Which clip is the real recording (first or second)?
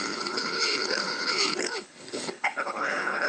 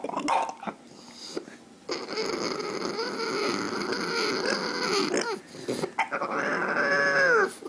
second